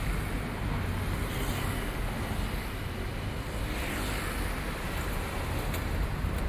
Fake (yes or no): no